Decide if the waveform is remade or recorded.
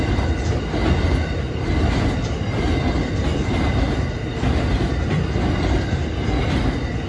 recorded